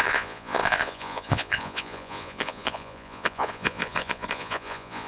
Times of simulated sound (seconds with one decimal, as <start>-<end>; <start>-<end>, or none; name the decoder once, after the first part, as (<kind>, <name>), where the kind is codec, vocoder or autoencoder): 0.0-5.1 (vocoder, Vocos)